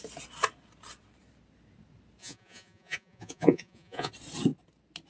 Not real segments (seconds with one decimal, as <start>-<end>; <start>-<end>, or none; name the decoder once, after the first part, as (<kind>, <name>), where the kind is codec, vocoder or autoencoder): 2.2-4.1 (vocoder, Vocos)